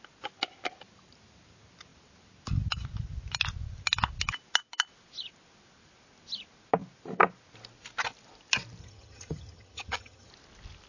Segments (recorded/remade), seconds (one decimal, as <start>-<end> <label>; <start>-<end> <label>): 0.0-8.8 recorded; 8.8-10.3 remade; 10.3-10.9 recorded